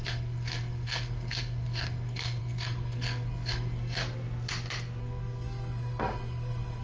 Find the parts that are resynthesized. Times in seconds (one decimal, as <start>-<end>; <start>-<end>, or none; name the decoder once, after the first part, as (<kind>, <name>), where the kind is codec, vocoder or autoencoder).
0.0-4.0 (codec, SNAC); 5.0-6.8